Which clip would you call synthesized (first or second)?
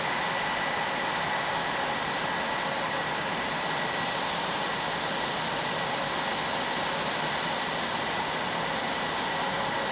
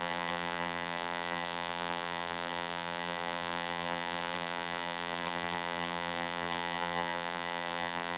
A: second